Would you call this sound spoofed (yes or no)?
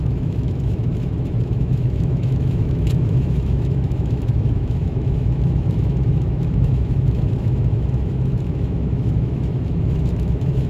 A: yes